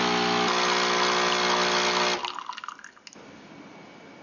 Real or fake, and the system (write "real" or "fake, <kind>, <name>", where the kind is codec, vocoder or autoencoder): real